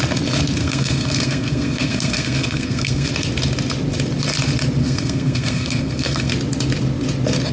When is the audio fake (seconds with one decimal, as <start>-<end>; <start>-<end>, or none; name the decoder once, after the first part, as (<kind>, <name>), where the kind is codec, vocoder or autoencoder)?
0.6-3.1 (codec, SNAC); 4.8-6.3